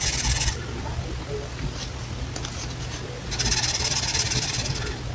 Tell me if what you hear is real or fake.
real